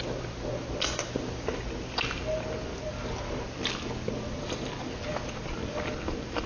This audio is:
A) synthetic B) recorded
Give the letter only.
B